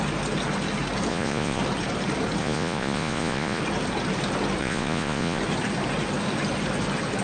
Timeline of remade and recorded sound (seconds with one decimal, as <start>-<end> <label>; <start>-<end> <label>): 0.0-1.1 recorded; 1.1-1.6 remade; 1.6-2.4 recorded; 2.4-3.6 remade; 3.6-4.6 recorded; 4.6-5.4 remade; 5.4-7.2 recorded